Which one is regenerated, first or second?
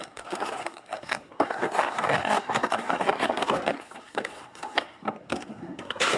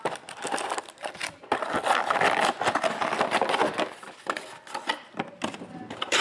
first